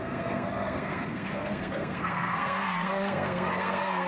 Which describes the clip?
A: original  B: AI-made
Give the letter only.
B